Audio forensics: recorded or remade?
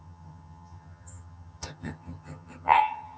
remade